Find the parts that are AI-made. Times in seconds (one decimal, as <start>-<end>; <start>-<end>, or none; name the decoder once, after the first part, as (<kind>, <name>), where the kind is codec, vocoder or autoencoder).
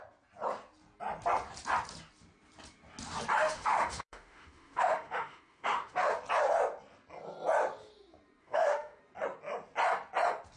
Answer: 3.4-6.1 (autoencoder, DAC-VAE); 8.4-9.0